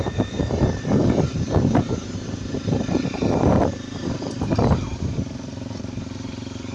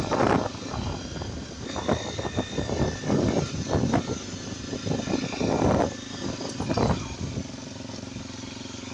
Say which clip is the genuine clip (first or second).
second